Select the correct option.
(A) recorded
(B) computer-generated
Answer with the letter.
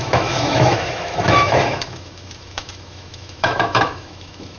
B